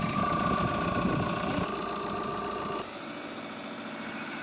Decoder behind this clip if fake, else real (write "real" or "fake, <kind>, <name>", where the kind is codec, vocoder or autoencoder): real